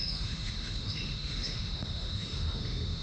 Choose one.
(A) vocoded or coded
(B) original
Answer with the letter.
A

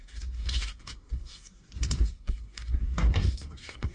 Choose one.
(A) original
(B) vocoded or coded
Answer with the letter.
B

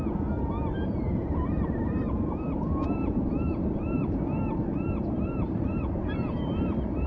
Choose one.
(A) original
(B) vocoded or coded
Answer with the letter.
B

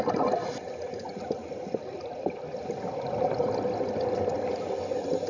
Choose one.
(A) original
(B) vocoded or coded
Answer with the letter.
A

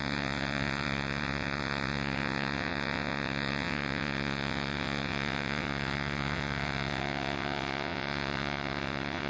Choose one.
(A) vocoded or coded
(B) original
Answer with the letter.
A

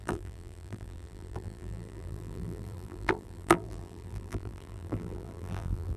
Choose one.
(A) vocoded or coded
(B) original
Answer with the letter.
A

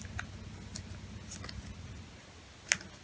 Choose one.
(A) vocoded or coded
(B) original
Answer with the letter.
B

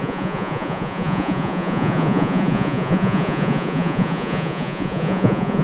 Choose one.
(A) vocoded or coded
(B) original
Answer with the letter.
A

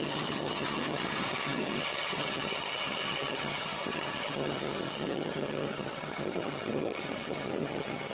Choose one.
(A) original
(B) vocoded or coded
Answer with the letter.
B